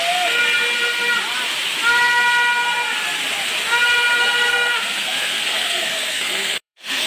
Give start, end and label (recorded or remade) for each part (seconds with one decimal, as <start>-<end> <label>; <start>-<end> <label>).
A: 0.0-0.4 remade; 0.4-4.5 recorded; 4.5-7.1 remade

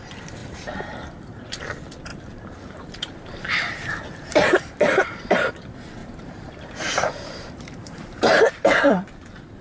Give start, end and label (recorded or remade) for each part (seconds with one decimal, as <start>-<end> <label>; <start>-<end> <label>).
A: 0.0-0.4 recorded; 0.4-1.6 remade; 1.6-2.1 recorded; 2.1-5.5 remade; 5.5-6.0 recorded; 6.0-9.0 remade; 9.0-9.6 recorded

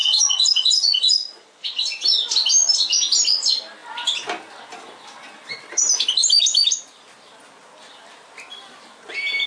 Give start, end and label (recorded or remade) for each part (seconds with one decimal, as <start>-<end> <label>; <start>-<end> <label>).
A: 0.0-1.8 remade; 1.8-9.5 recorded

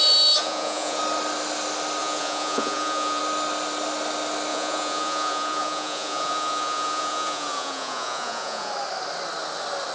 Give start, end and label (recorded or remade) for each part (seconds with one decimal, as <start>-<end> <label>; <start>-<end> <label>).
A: 0.0-0.4 recorded; 0.4-1.0 remade; 1.0-2.0 recorded; 2.0-3.2 remade; 3.2-4.5 recorded; 4.5-8.7 remade; 8.7-9.9 recorded

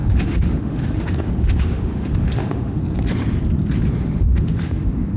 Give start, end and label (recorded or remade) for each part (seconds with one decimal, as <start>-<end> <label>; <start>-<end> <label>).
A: 0.0-2.8 remade; 2.8-4.0 recorded; 4.0-5.2 remade

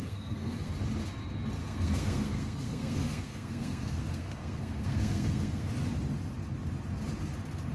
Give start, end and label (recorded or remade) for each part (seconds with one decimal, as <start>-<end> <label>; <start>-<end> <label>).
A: 0.0-0.7 remade; 0.7-1.6 recorded; 1.6-5.7 remade; 5.7-7.7 recorded